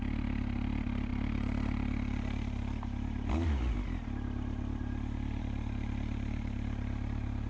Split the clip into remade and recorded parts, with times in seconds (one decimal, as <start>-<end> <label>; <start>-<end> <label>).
0.0-7.5 recorded